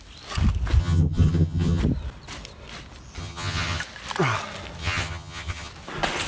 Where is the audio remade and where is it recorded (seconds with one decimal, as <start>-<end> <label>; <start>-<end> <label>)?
0.0-0.8 recorded; 0.8-1.8 remade; 1.8-3.2 recorded; 3.2-3.8 remade; 3.8-4.8 recorded; 4.8-5.7 remade; 5.7-6.3 recorded